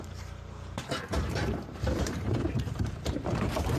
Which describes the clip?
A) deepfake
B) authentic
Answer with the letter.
A